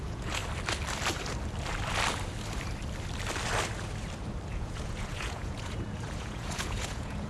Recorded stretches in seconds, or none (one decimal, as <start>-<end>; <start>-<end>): 0.4-4.5